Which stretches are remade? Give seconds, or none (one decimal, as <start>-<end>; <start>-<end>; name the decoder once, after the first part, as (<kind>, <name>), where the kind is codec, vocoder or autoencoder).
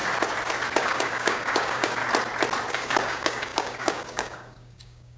0.8-2.0 (codec, DAC); 2.7-5.2